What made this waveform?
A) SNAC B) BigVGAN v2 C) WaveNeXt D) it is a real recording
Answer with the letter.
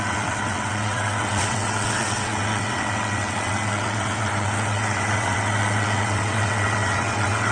C